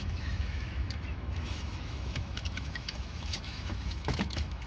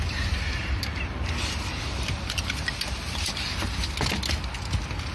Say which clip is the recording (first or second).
second